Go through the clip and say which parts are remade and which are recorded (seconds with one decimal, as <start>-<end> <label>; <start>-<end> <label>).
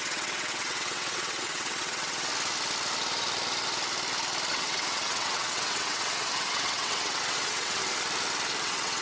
0.0-2.3 remade; 2.3-4.5 recorded; 4.5-7.8 remade; 7.8-8.6 recorded; 8.6-9.0 remade